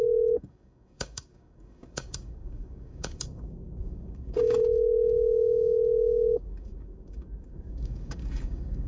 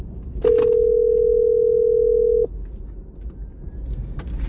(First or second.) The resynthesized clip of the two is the first